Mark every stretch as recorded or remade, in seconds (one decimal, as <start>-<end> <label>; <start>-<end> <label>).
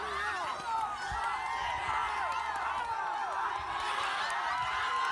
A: 0.0-5.1 recorded